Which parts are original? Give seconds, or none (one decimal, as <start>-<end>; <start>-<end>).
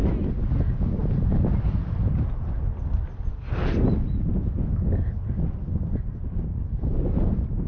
0.0-1.0; 4.3-7.7